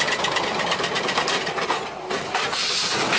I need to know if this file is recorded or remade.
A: recorded